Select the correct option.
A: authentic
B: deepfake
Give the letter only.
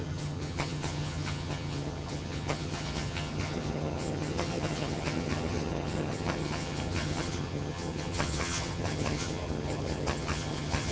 B